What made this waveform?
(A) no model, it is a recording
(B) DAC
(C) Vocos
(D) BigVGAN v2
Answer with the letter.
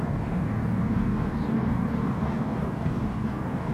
B